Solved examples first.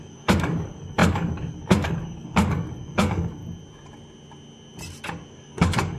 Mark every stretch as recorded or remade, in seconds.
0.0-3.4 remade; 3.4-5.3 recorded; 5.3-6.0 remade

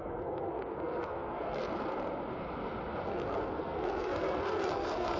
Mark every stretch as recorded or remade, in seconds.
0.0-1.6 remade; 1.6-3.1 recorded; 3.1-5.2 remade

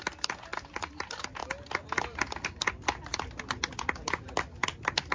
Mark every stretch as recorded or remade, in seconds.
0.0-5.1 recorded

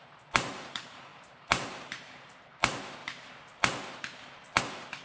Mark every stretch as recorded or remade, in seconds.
0.0-3.0 remade; 3.0-4.6 recorded; 4.6-5.0 remade

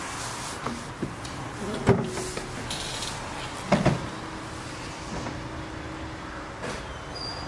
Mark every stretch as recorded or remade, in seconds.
0.0-7.5 recorded

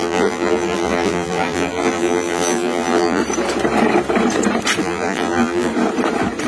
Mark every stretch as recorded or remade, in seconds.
0.0-3.2 remade; 3.2-4.8 recorded; 4.8-5.7 remade; 5.7-6.5 recorded

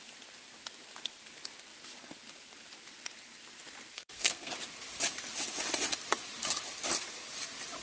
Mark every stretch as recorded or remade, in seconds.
0.0-3.9 recorded; 3.9-4.5 remade; 4.5-7.8 recorded